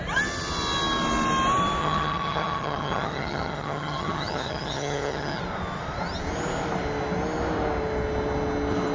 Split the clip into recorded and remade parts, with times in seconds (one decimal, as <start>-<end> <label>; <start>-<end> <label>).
0.0-1.8 recorded; 1.8-5.4 remade; 5.4-8.9 recorded